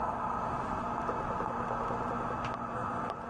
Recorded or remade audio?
recorded